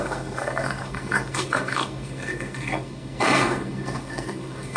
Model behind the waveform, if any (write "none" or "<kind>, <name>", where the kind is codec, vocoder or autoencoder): codec, SNAC